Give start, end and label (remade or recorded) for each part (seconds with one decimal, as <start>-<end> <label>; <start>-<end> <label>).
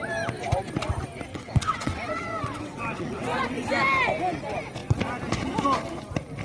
0.0-1.3 recorded; 1.3-3.7 remade; 3.7-6.4 recorded